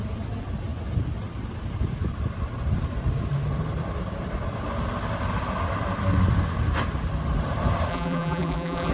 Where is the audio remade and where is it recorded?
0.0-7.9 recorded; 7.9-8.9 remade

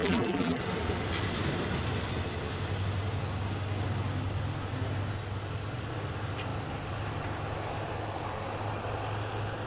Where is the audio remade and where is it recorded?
0.0-0.6 remade; 0.6-9.7 recorded